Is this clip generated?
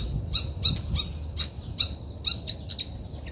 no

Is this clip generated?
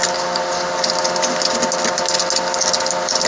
no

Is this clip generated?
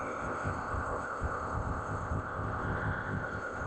yes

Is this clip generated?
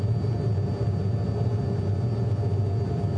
no